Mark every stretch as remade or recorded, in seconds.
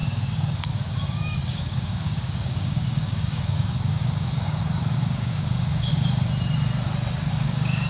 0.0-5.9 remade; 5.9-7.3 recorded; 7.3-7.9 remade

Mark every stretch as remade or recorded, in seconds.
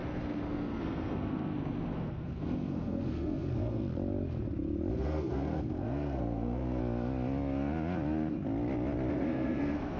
0.0-3.8 remade; 3.8-4.9 recorded; 4.9-6.8 remade; 6.8-9.1 recorded; 9.1-10.0 remade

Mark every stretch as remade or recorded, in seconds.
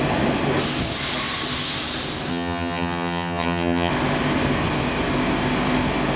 0.0-2.3 recorded; 2.3-3.9 remade; 3.9-6.2 recorded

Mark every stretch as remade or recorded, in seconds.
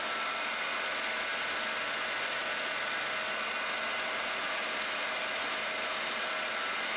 0.0-7.0 recorded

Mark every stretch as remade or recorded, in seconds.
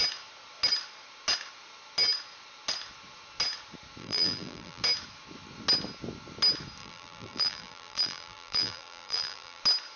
0.0-4.0 recorded; 4.0-4.8 remade; 4.8-6.8 recorded; 6.8-9.6 remade; 9.6-10.0 recorded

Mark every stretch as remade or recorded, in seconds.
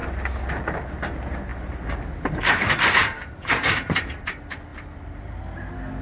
0.0-0.5 remade; 0.5-1.5 recorded; 1.5-4.2 remade; 4.2-4.7 recorded; 4.7-5.4 remade; 5.4-6.0 recorded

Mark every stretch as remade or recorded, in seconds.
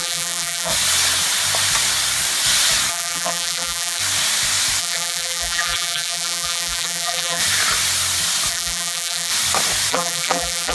0.0-0.7 remade; 0.7-2.9 recorded; 2.9-4.0 remade; 4.0-4.8 recorded; 4.8-7.4 remade; 7.4-8.5 recorded; 8.5-9.3 remade; 9.3-9.9 recorded; 9.9-10.7 remade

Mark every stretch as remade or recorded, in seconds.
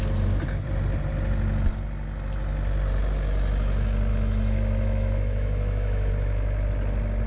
0.0-4.1 recorded; 4.1-6.1 remade; 6.1-7.3 recorded